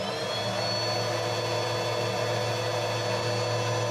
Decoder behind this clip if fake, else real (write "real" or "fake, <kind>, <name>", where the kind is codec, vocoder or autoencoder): real